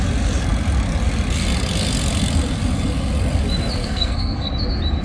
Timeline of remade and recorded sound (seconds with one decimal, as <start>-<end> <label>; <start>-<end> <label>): 0.0-3.8 recorded; 3.8-4.5 remade; 4.5-5.0 recorded

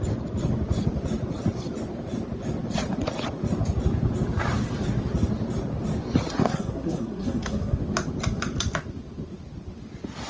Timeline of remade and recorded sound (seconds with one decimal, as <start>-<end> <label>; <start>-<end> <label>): 0.0-6.4 recorded; 6.4-7.8 remade; 7.8-10.3 recorded

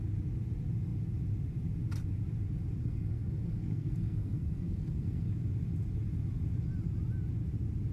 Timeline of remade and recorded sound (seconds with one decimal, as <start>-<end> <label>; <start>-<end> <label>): 0.0-2.8 recorded; 2.8-5.3 remade; 5.3-7.9 recorded

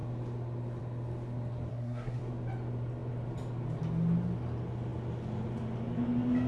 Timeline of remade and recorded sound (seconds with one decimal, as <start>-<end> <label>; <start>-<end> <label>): 0.0-1.7 recorded; 1.7-2.2 remade; 2.2-6.5 recorded

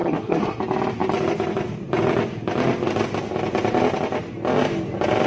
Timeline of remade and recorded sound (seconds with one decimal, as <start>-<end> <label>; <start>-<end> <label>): 0.0-0.6 remade; 0.6-5.3 recorded

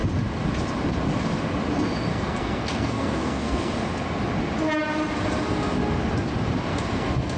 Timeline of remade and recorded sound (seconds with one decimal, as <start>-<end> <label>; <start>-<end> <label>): 0.0-2.1 recorded; 2.1-3.7 remade; 3.7-6.7 recorded; 6.7-7.4 remade

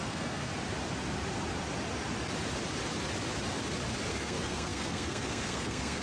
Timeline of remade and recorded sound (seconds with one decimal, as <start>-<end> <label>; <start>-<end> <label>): 0.0-0.5 remade; 0.5-4.1 recorded; 4.1-6.0 remade